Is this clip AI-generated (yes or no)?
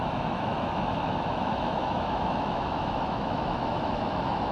yes